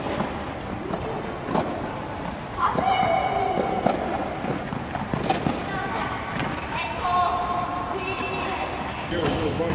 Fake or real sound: real